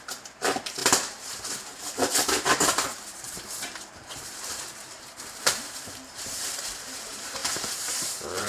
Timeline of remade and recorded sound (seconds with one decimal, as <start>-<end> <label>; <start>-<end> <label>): 0.0-8.5 remade